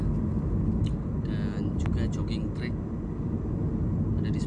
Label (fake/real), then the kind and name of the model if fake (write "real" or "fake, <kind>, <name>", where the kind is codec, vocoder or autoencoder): real